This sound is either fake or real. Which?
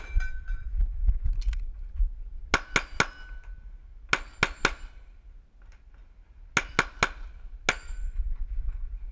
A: real